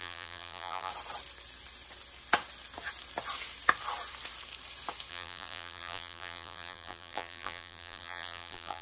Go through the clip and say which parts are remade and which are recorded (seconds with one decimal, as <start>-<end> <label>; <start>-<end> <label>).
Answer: 0.0-0.9 remade; 0.9-5.1 recorded; 5.1-8.8 remade